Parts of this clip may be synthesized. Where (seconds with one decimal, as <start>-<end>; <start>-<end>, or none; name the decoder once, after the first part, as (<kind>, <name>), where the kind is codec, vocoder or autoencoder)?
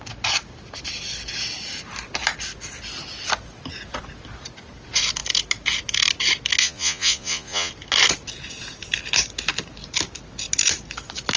6.6-7.7 (vocoder, Vocos)